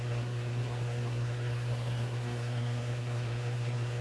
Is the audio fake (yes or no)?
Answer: yes